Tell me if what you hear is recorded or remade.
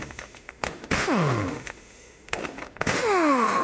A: remade